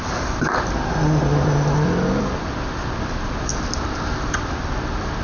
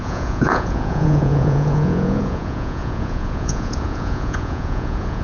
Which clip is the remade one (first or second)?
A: second